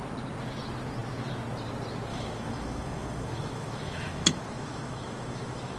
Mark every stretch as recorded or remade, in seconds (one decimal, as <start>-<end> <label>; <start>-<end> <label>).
0.0-2.1 recorded; 2.1-5.8 remade